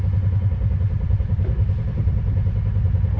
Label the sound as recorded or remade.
recorded